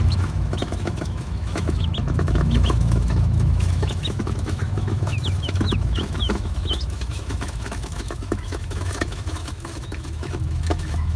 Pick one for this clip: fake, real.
fake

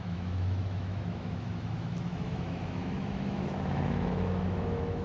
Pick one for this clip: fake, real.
fake